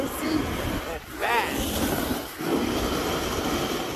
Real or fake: real